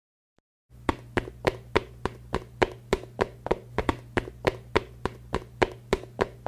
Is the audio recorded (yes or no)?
yes